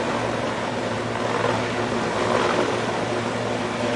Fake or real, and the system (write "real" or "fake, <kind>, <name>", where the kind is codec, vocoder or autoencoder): real